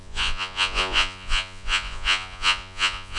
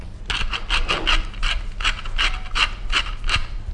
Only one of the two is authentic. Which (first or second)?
second